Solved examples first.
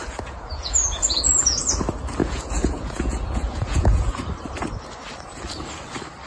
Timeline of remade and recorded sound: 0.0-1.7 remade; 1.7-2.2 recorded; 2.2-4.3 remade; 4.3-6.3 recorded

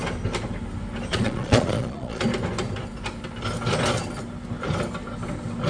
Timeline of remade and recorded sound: 0.0-1.1 recorded; 1.1-2.2 remade; 2.2-5.7 recorded

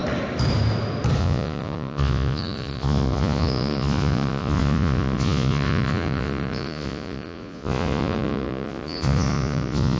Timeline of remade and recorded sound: 0.0-1.2 recorded; 1.2-10.0 remade

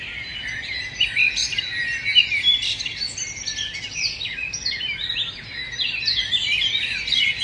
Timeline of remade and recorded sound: 0.0-7.4 recorded

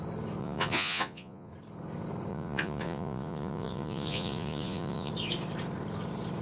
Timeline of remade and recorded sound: 0.0-0.4 recorded; 0.4-1.5 remade; 1.5-2.3 recorded; 2.3-5.1 remade; 5.1-6.4 recorded